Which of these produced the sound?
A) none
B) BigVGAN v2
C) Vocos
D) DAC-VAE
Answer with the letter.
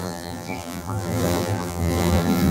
B